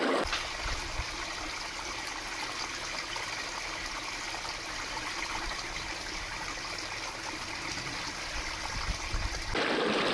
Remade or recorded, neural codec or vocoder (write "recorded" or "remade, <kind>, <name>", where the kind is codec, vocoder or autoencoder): recorded